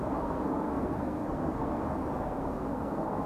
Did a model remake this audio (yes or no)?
yes